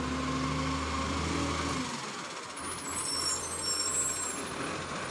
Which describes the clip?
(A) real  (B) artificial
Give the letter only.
A